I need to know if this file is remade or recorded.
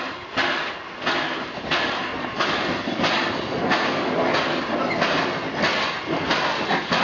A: recorded